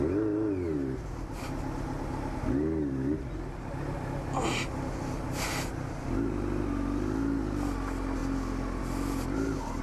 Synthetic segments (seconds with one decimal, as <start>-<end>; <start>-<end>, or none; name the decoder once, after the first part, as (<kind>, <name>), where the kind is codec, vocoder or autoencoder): none